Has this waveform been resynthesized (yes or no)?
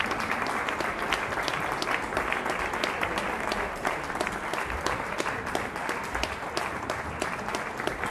no